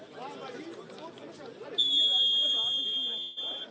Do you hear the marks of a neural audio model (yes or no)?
no